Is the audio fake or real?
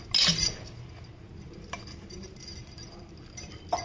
real